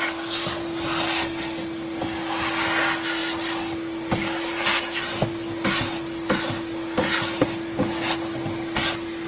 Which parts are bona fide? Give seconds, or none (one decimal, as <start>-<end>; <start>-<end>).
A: 0.0-9.3